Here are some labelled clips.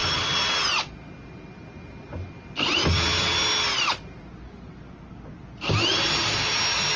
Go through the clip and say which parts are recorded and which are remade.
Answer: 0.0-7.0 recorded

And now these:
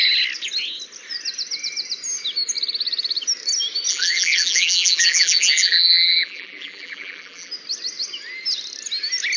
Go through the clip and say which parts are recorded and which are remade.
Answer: 0.0-3.9 recorded; 3.9-7.5 remade; 7.5-9.4 recorded

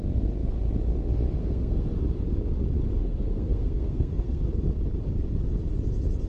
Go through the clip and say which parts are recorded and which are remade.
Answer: 0.0-1.4 recorded; 1.4-1.9 remade; 1.9-3.0 recorded; 3.0-4.4 remade; 4.4-6.3 recorded